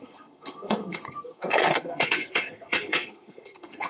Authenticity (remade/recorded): remade